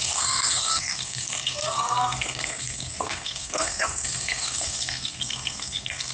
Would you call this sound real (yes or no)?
no